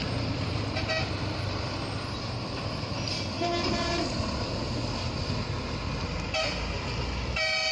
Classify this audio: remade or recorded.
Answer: recorded